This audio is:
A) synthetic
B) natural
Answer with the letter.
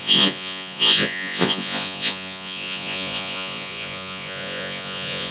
A